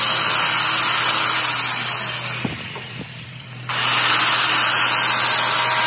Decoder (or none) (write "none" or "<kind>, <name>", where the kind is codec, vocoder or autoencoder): none